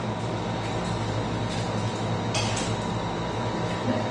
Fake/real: real